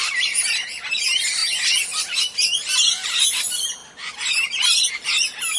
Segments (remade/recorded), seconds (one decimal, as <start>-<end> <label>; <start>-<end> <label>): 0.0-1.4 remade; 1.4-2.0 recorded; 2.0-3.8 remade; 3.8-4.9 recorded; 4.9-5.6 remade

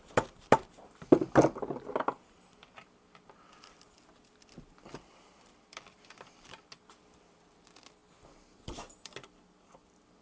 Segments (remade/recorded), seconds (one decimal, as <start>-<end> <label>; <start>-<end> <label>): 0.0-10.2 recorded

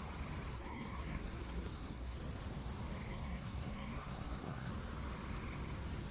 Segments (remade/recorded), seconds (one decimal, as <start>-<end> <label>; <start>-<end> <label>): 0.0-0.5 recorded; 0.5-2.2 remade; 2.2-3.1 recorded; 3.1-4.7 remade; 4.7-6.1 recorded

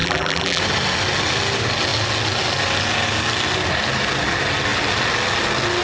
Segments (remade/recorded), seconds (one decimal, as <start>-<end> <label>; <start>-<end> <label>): 0.0-0.6 remade; 0.6-5.8 recorded

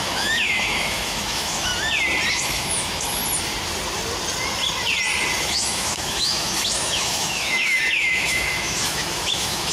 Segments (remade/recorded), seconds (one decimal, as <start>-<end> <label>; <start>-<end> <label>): 0.0-1.7 remade; 1.7-2.3 recorded; 2.3-3.2 remade; 3.2-5.4 recorded; 5.4-9.7 remade

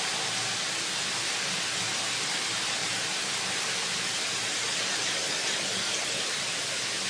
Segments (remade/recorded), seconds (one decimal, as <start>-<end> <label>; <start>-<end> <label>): 0.0-7.1 recorded